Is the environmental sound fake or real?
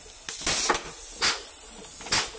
real